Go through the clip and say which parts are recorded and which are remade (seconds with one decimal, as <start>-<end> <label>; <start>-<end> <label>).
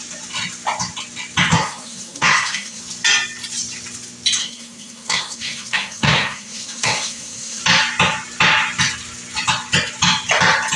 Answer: 0.0-1.5 recorded; 1.5-2.8 remade; 2.8-4.4 recorded; 4.4-7.6 remade; 7.6-10.8 recorded